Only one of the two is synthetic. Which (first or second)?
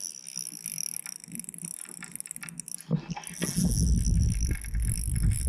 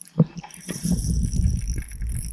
second